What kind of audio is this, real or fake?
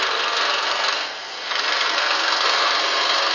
fake